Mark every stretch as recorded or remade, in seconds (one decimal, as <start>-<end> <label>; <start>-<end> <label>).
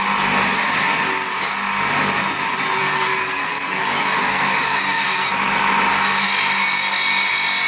0.0-2.8 recorded; 2.8-5.3 remade; 5.3-7.7 recorded